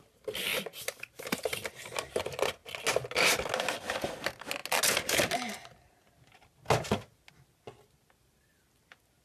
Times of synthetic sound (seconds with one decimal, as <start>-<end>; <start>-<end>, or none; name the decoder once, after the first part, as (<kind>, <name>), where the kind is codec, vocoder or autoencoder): none